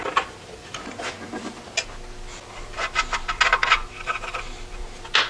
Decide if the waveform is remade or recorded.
recorded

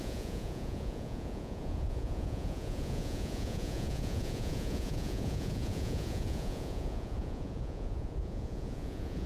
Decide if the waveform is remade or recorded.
remade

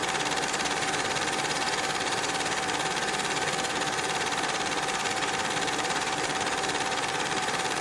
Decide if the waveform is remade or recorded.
remade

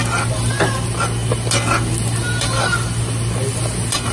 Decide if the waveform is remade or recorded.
recorded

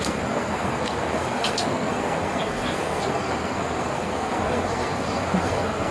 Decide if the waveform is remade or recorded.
remade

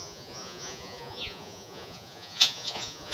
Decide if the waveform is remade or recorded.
remade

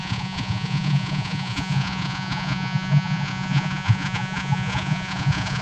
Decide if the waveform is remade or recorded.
remade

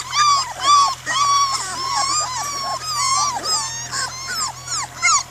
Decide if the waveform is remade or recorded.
recorded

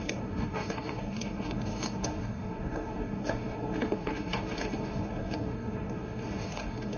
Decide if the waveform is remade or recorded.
remade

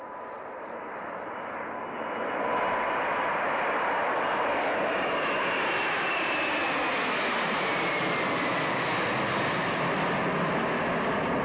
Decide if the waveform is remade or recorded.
recorded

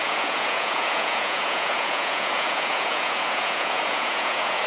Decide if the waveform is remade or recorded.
remade